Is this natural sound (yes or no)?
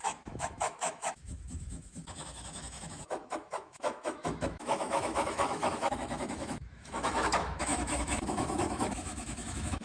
no